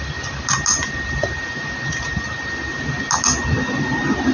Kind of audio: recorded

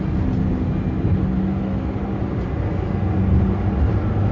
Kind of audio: recorded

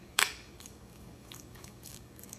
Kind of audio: remade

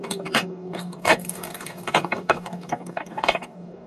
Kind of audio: remade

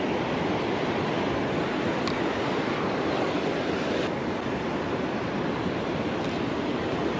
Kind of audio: recorded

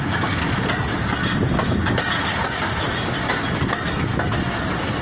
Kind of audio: recorded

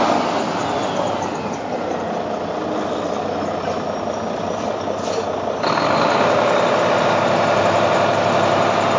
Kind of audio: recorded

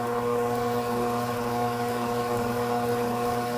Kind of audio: remade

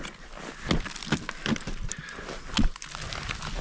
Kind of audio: recorded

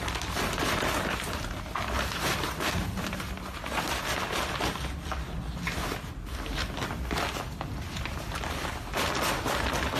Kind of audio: recorded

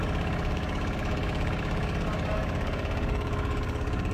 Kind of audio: remade